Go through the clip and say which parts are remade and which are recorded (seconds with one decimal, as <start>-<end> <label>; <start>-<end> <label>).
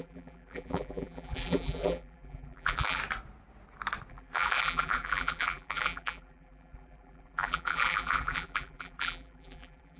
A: 0.0-3.0 remade; 3.0-4.1 recorded; 4.1-10.0 remade